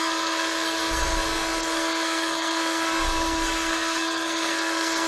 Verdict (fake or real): fake